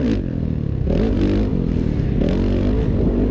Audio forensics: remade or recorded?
recorded